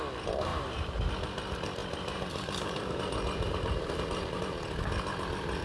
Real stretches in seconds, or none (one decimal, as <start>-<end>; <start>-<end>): 0.0-0.5; 1.1-1.8; 4.4-5.6